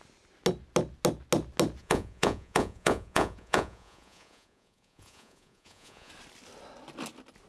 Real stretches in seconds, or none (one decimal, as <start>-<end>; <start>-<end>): 0.0-1.8; 6.1-7.5